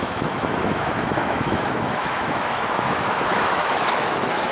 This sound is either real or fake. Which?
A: fake